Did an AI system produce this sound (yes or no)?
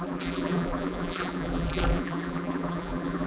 yes